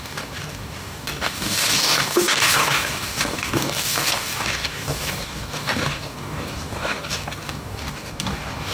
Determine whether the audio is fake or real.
fake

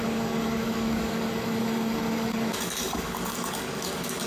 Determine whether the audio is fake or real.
fake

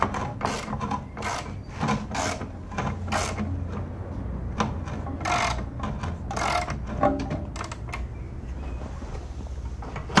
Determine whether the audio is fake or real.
real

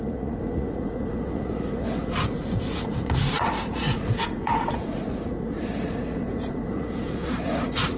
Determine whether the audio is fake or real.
fake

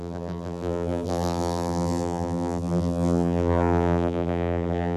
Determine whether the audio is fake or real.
fake